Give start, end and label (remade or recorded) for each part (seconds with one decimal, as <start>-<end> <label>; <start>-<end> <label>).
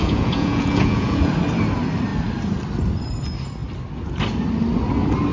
0.0-1.3 remade; 1.3-5.3 recorded